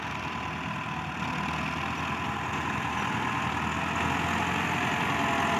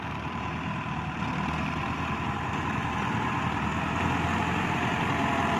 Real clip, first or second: first